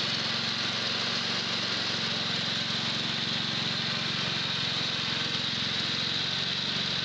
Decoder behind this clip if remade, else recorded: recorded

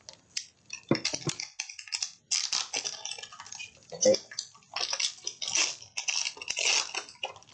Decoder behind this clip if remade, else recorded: recorded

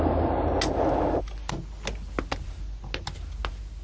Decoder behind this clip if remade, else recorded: recorded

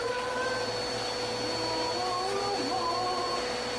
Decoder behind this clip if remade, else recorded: recorded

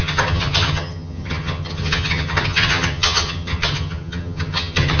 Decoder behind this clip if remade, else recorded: remade, vocoder, HiFi-GAN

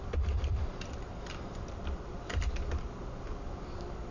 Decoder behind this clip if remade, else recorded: remade, vocoder, BigVGAN v2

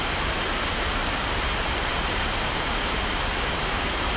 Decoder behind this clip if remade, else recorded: remade, vocoder, BigVGAN v2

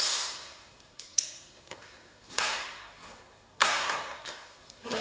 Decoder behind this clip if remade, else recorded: remade, codec, SNAC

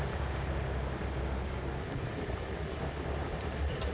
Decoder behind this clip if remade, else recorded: recorded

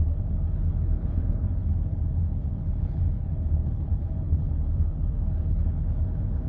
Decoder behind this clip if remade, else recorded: remade, codec, HILCodec